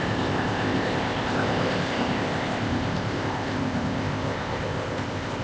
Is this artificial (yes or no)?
yes